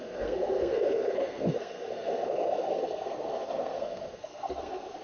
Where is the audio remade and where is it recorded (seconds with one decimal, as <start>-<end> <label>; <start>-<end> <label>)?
0.0-5.0 remade